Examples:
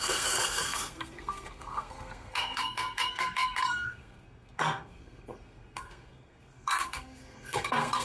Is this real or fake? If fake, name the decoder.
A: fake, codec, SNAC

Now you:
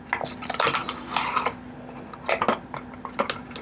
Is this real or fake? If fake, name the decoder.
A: real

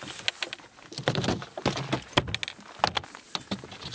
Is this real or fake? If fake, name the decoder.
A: real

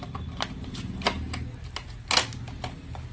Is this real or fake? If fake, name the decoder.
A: real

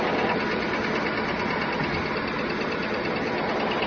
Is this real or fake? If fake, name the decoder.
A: real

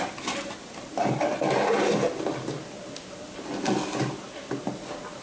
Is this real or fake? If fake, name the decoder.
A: real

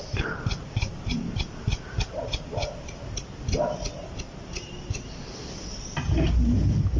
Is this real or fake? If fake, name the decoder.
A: real